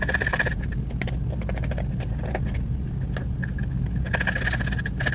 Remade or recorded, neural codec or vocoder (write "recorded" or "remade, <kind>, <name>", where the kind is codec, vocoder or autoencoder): recorded